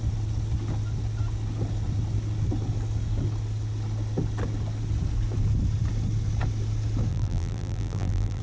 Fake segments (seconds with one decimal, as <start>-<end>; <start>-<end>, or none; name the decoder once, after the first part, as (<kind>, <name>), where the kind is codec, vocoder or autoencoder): 7.1-8.4 (vocoder, BigVGAN v2)